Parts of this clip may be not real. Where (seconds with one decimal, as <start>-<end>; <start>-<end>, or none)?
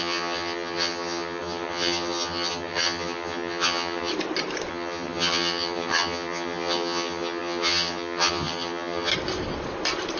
0.0-4.1; 4.7-9.1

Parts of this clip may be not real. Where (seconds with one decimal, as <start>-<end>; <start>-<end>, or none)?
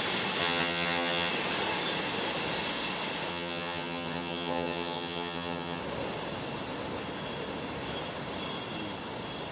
0.4-1.3; 3.3-5.8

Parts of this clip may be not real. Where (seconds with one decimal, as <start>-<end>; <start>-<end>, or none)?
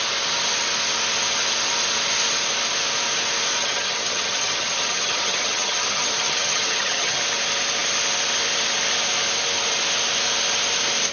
3.6-7.2